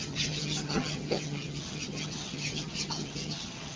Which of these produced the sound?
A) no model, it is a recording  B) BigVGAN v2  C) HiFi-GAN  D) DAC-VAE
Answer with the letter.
C